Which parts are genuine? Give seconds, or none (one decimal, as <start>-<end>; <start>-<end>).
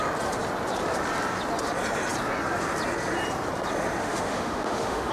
0.0-4.0